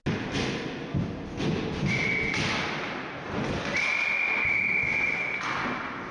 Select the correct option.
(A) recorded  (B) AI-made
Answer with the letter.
A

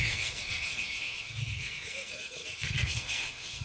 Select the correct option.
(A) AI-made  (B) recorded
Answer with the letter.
A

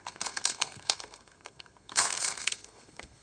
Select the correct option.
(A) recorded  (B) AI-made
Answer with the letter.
B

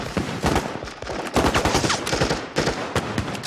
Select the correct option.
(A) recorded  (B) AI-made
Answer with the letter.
A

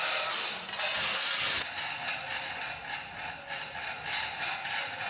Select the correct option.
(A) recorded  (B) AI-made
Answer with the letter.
A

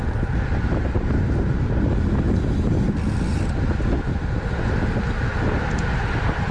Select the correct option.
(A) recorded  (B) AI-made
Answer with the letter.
A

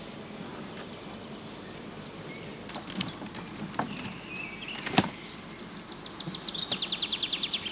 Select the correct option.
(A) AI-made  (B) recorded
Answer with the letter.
B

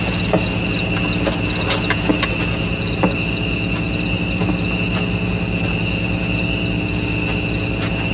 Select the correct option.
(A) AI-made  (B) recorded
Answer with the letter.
B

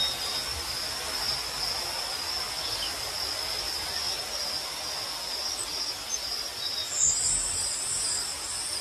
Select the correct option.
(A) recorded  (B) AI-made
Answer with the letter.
A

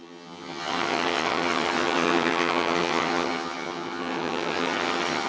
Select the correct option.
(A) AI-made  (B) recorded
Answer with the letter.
A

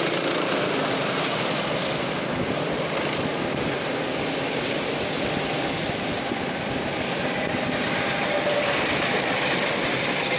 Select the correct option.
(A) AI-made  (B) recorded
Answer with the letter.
B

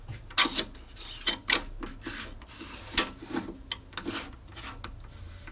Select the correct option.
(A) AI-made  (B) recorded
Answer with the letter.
B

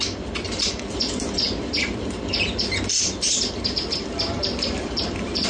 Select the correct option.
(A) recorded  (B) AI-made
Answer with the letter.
B